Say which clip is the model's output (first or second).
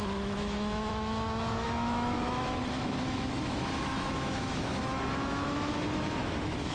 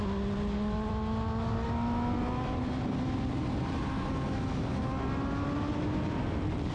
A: first